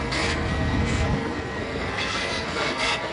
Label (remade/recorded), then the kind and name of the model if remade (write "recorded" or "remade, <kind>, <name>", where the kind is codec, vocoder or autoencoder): remade, codec, SNAC